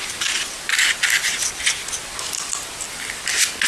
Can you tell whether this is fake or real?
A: real